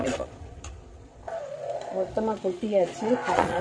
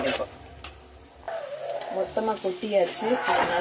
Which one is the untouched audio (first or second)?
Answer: second